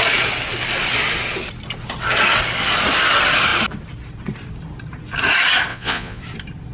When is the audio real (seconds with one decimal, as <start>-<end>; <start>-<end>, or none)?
0.0-5.7; 6.2-6.7

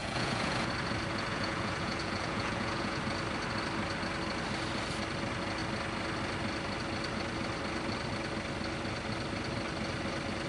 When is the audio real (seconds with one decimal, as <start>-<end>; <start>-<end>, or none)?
0.7-1.3; 3.0-10.5

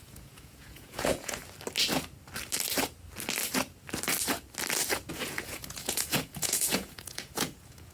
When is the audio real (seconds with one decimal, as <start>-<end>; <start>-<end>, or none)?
1.4-5.1

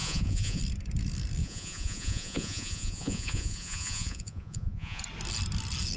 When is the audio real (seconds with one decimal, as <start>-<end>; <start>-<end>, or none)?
0.6-1.4; 5.0-6.0

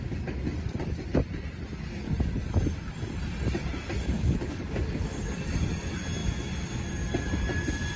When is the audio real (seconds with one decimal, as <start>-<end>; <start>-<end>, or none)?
0.0-8.0

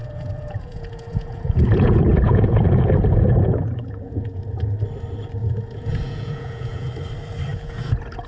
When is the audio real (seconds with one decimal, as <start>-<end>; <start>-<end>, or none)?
4.4-5.4; 6.9-7.5

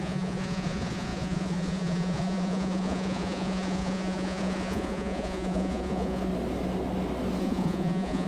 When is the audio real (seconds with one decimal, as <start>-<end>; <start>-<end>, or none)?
6.3-7.4

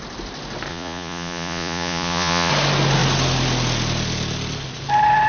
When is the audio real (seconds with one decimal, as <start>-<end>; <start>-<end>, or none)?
0.0-0.7; 2.5-5.3